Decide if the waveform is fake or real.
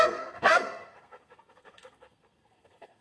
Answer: fake